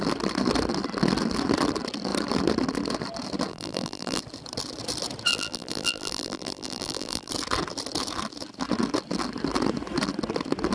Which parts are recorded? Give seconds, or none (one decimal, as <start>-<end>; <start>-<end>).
0.0-3.5; 4.2-5.3; 7.3-10.7